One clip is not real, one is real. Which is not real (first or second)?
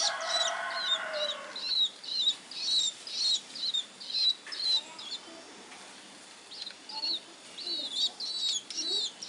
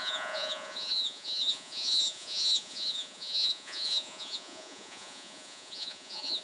second